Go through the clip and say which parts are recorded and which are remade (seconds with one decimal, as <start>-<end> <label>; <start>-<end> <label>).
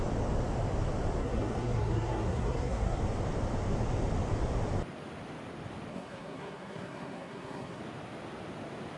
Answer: 0.0-1.2 recorded; 1.2-3.0 remade; 3.0-5.9 recorded; 5.9-7.8 remade; 7.8-9.0 recorded